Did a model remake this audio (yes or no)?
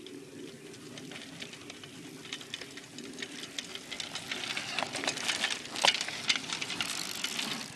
no